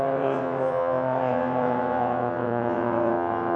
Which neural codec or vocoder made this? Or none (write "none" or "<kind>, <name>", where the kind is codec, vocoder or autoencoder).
vocoder, WaveNeXt